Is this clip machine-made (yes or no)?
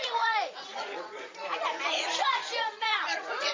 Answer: yes